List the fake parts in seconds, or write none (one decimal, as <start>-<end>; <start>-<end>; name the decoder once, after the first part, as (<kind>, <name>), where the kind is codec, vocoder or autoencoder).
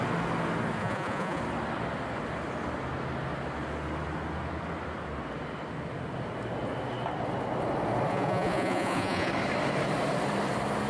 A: 0.8-1.4 (vocoder, Vocos); 8.1-9.3